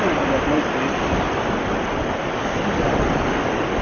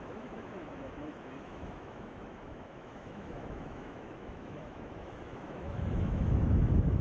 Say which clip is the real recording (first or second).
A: first